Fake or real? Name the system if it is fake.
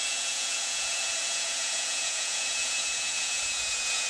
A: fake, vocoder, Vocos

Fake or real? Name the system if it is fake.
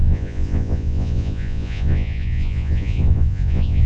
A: fake, vocoder, Vocos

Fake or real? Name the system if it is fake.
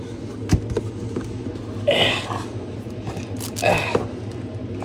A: real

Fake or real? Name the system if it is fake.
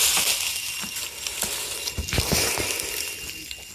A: real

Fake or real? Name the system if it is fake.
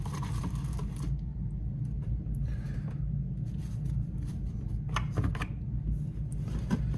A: real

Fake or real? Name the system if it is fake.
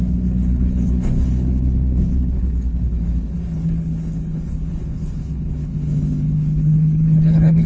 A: fake, codec, HILCodec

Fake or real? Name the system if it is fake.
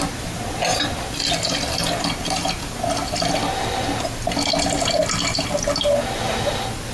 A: real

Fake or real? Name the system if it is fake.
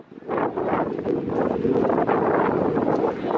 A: real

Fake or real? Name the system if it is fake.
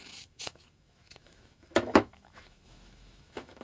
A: fake, autoencoder, DAC-VAE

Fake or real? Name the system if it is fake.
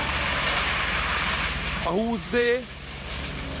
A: fake, vocoder, BigVGAN v2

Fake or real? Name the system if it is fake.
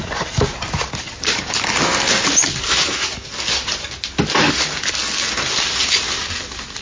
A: real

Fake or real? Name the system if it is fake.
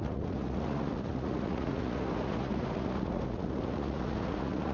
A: fake, vocoder, Vocos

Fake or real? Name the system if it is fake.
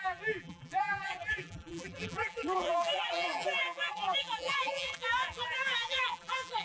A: fake, vocoder, BigVGAN v2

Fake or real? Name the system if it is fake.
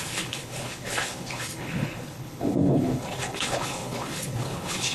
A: fake, codec, HILCodec